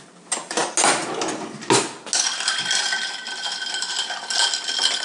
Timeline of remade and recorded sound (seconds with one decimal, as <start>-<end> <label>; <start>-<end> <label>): 0.0-5.0 recorded